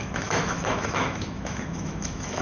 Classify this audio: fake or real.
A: fake